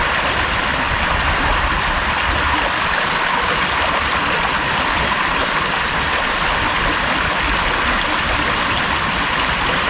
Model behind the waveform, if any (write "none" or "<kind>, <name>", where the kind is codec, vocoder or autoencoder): none